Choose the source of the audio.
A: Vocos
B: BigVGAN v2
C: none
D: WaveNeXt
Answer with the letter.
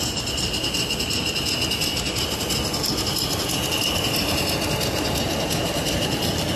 C